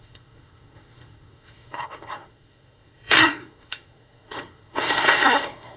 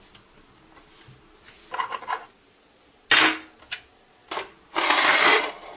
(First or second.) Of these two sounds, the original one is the second